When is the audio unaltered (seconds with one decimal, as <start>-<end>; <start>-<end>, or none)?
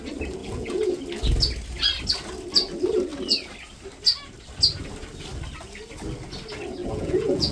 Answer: 0.0-0.4; 1.0-6.8